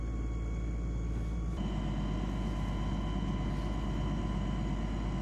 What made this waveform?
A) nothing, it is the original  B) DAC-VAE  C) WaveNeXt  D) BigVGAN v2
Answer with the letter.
A